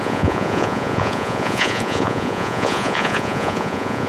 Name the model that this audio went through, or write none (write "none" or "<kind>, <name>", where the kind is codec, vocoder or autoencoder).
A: vocoder, Vocos